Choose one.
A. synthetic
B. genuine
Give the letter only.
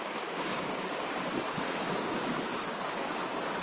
A